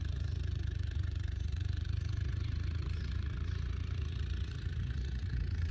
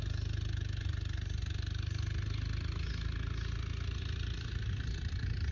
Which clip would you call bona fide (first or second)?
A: second